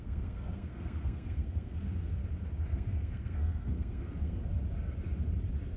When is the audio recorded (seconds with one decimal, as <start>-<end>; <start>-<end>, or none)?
2.2-2.7; 4.4-5.8